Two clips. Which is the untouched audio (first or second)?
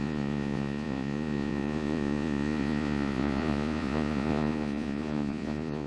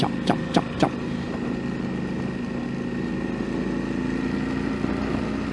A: second